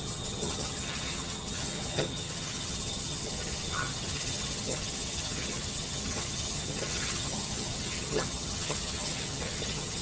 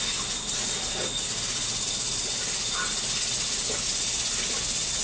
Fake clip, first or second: first